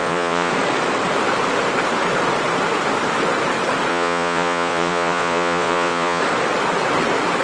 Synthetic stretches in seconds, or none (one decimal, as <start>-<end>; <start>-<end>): 0.0-0.5; 3.9-6.2